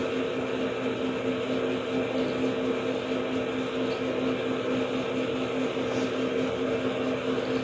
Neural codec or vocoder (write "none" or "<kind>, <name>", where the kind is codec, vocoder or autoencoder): none